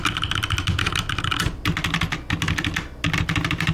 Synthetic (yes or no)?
no